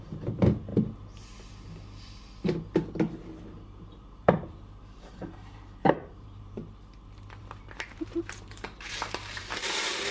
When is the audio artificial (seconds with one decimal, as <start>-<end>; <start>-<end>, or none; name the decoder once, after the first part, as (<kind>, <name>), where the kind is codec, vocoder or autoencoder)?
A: 0.0-0.7 (vocoder, BigVGAN v2); 3.0-6.6; 7.4-10.1